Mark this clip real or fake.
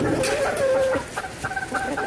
real